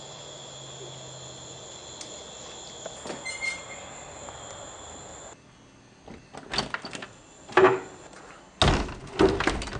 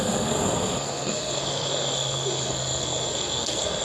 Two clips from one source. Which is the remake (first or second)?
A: second